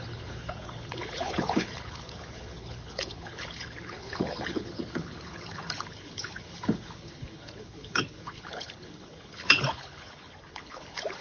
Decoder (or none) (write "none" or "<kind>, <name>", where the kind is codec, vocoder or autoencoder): codec, HILCodec